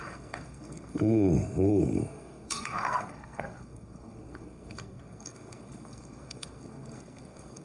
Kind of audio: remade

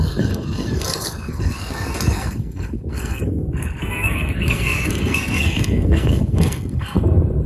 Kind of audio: remade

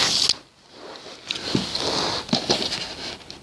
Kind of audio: recorded